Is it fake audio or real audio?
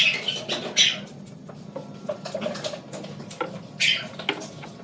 real